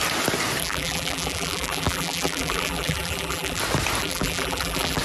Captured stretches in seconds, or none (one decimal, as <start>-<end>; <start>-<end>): 0.0-0.6; 3.6-4.0